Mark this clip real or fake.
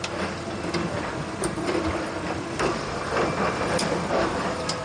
real